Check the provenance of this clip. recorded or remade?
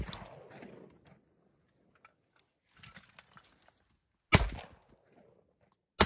recorded